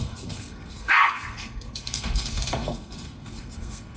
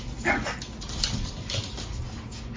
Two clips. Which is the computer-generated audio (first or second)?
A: first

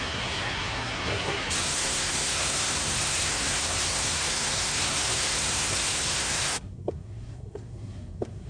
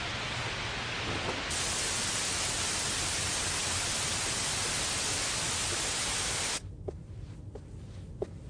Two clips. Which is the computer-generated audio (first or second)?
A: first